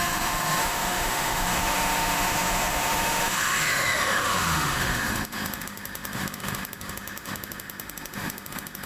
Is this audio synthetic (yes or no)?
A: yes